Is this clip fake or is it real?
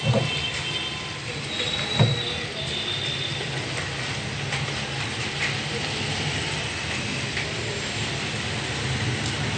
real